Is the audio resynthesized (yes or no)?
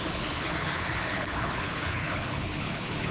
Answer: yes